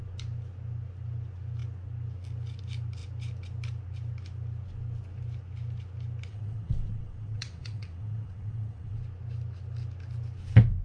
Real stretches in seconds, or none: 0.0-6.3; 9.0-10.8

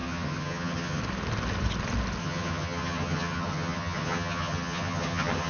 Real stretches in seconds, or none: 1.0-2.2

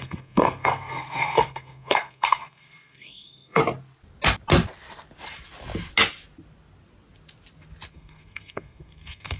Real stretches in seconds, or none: 3.6-7.9

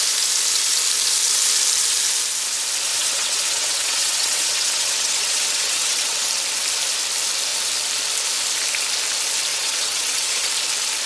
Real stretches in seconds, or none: 0.0-2.9; 6.3-9.5; 10.5-11.1

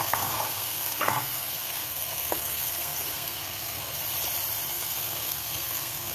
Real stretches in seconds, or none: 4.0-4.7